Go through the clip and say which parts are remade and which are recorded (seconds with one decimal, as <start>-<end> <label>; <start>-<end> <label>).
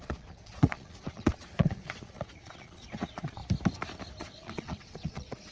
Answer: 0.0-3.4 remade; 3.4-4.2 recorded; 4.2-5.5 remade